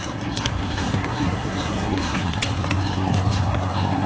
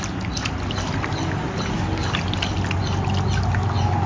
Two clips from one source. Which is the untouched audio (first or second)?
second